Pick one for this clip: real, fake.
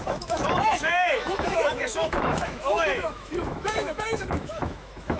fake